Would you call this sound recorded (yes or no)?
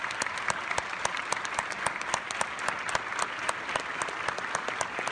yes